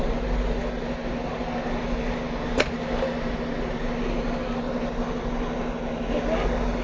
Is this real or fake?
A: real